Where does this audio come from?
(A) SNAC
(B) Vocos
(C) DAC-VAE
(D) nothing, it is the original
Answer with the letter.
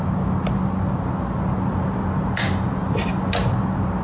D